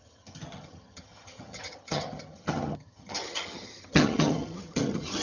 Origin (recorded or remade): remade